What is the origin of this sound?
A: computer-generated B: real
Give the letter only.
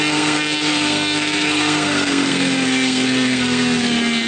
A